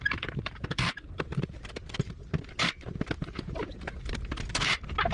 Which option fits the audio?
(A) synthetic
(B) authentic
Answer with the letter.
A